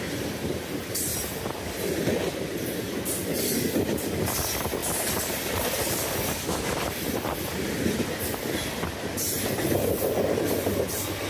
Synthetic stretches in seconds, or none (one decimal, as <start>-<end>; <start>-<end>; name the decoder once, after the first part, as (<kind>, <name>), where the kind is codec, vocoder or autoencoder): none